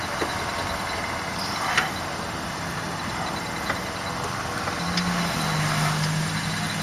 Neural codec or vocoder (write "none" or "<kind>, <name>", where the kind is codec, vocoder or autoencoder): none